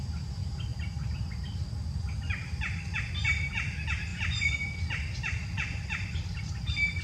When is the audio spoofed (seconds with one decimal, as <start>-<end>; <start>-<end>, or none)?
4.1-6.5